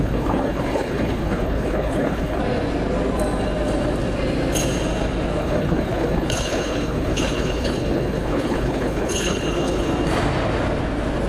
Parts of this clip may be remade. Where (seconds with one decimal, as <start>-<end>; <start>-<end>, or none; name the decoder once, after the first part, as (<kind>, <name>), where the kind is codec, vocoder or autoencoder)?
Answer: 0.0-2.4 (codec, HILCodec); 5.4-9.9